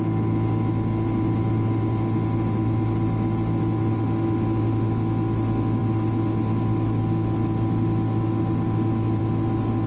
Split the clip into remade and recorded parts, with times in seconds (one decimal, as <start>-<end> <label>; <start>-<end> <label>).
0.0-9.9 recorded